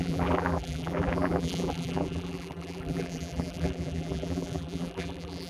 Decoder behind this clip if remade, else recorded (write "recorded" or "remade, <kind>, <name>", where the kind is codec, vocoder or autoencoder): remade, vocoder, BigVGAN v2